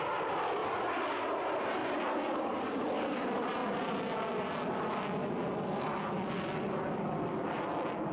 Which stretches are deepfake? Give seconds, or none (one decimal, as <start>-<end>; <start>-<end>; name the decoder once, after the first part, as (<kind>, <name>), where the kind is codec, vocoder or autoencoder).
0.0-0.6 (vocoder, BigVGAN v2); 1.4-1.8; 2.6-3.6; 6.1-8.1